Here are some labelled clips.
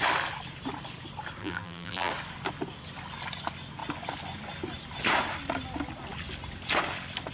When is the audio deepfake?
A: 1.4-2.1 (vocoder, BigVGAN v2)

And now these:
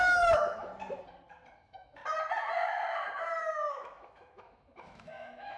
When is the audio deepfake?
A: 0.0-0.7 (autoencoder, DAC-VAE); 1.6-2.0; 3.7-5.6

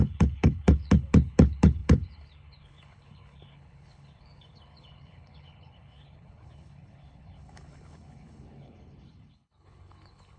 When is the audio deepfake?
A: 0.0-10.4 (codec, HILCodec)

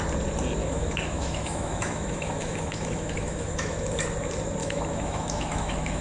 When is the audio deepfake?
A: 0.6-4.0 (autoencoder, DAC-VAE); 4.6-6.0

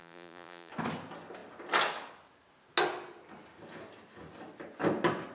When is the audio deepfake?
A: 0.0-0.7 (vocoder, BigVGAN v2)

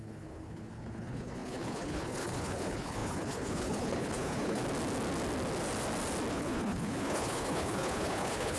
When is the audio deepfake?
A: 0.0-4.6 (codec, HILCodec); 6.3-8.6

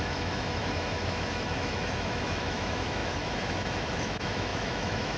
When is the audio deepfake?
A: 0.0-5.2 (autoencoder, DAC-VAE)

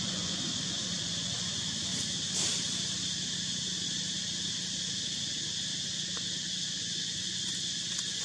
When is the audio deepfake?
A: 0.0-1.9 (vocoder, Vocos); 6.8-8.2